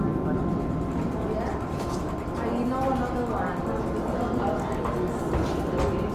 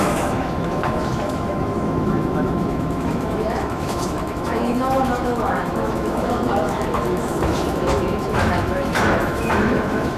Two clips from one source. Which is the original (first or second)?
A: first